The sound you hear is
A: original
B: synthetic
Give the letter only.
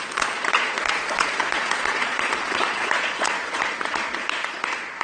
B